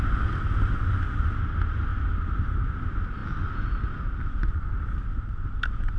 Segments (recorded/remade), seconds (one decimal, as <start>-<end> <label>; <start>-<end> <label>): 0.0-6.0 recorded